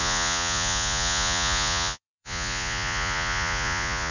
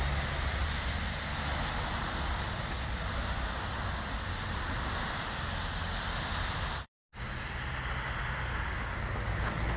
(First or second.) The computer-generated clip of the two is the first